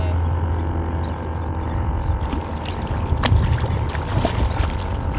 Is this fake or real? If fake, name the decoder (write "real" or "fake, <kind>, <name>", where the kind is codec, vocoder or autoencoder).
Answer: real